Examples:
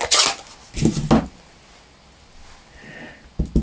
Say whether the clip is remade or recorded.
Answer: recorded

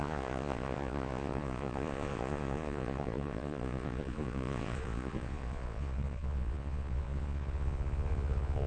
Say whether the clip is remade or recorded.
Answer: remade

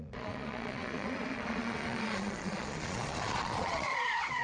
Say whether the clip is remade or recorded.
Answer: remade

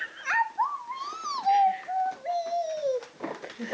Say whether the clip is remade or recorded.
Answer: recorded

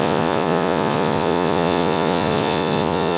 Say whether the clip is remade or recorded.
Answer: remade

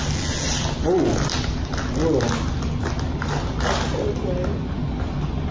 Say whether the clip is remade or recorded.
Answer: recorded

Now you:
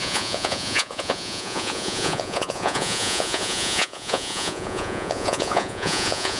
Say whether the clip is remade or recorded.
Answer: remade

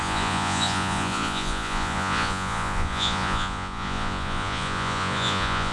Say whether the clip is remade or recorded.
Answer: remade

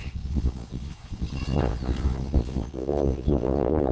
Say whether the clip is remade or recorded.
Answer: remade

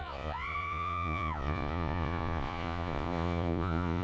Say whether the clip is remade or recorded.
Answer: remade